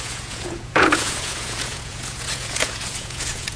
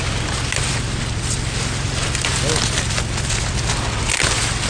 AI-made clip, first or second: first